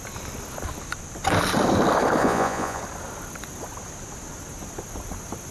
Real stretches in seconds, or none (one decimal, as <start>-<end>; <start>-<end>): 0.0-2.2; 2.8-5.5